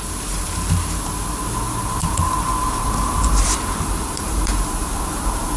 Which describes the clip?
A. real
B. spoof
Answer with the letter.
B